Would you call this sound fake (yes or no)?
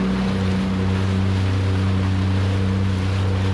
no